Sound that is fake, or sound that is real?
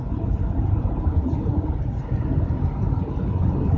real